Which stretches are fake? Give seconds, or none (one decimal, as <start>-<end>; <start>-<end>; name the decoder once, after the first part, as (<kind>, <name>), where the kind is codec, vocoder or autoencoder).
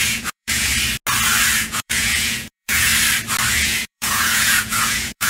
0.0-0.7 (vocoder, Vocos); 1.6-2.9; 3.5-5.3